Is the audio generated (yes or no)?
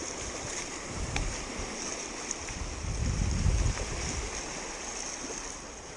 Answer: no